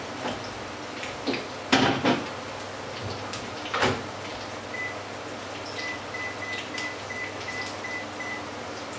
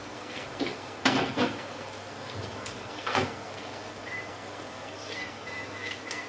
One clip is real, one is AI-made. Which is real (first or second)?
first